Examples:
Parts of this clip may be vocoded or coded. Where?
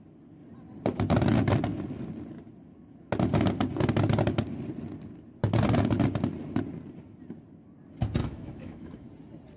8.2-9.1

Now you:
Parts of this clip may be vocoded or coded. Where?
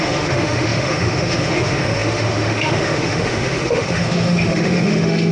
0.0-5.3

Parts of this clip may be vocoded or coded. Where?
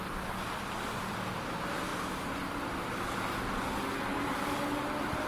none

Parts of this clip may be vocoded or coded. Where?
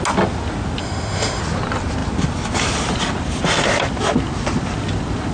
0.8-1.4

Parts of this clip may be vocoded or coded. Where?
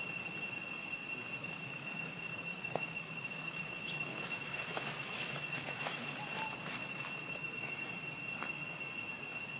1.4-6.2; 6.8-7.7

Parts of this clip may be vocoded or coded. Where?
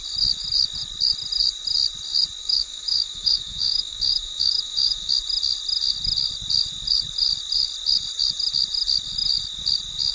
2.4-5.1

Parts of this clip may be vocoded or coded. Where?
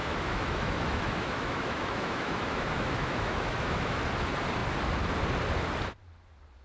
0.0-4.0